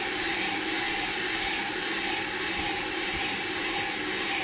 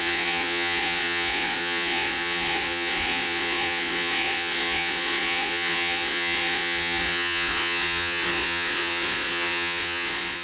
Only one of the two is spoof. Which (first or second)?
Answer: second